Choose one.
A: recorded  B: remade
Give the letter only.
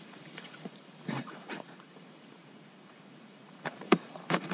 B